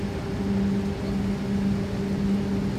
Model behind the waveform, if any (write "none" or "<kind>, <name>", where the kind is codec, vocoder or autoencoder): none